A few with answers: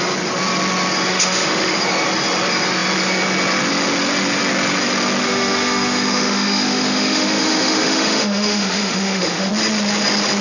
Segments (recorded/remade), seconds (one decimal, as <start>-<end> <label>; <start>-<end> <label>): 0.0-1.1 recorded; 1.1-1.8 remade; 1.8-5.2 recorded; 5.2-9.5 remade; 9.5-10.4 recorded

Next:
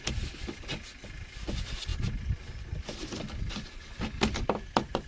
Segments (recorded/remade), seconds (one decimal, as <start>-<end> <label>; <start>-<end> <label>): 0.0-5.1 recorded

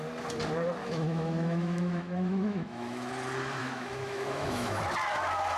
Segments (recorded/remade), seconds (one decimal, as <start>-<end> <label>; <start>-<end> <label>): 0.0-0.8 recorded; 0.8-3.1 remade; 3.1-3.6 recorded; 3.6-4.8 remade; 4.8-5.6 recorded

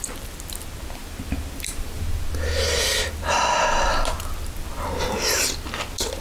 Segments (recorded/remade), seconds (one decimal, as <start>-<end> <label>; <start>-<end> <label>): 0.0-6.2 recorded

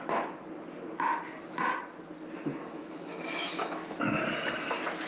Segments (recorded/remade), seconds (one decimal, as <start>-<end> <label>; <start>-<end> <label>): 0.0-2.5 recorded; 2.5-4.1 remade; 4.1-5.1 recorded

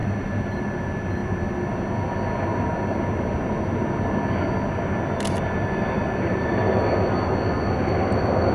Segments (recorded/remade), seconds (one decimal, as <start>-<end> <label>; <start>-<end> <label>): 0.0-8.5 recorded

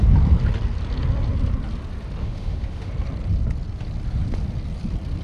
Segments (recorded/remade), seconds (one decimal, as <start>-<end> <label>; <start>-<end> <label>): 0.0-2.2 recorded; 2.2-2.9 remade; 2.9-5.2 recorded

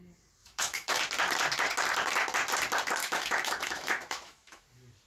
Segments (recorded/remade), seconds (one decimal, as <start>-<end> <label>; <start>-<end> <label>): 0.0-0.4 recorded; 0.4-1.0 remade; 1.0-3.0 recorded; 3.0-4.6 remade; 4.6-5.1 recorded